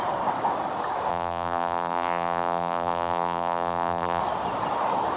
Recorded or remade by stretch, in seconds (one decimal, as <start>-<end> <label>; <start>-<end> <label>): 0.0-1.1 recorded; 1.1-4.2 remade; 4.2-5.2 recorded